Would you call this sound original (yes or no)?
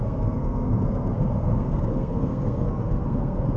no